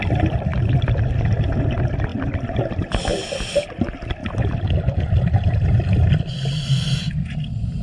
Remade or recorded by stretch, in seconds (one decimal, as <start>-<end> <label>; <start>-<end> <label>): 0.0-7.8 recorded